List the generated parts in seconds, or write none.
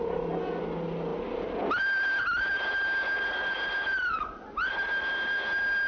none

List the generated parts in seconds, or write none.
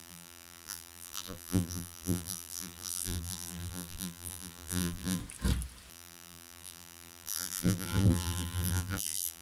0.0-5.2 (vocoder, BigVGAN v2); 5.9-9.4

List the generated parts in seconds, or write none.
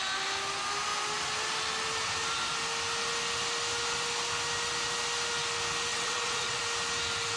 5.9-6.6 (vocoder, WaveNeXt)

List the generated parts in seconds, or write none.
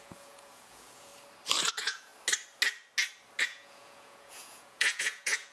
0.0-1.1 (vocoder, Vocos); 1.7-2.1; 3.4-5.5